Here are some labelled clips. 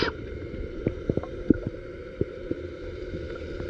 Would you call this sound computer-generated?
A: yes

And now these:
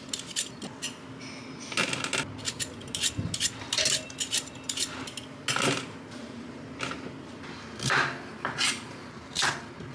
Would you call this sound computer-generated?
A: no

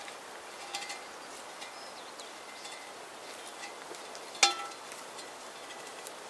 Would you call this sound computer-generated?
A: no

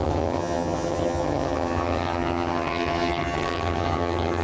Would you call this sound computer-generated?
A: yes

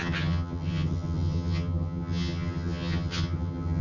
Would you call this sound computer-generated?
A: yes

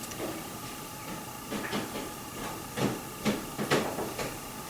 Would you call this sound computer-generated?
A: no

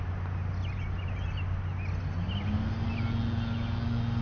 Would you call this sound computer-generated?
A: no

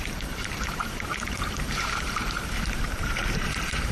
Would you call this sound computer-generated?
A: yes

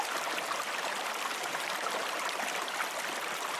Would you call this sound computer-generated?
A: no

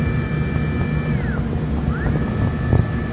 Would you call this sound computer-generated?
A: no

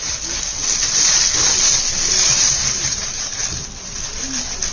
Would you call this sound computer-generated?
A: no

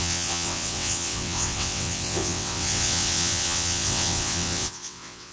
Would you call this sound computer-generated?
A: yes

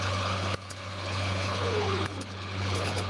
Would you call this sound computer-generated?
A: yes